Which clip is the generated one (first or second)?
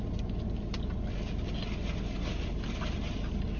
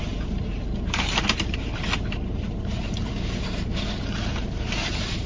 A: second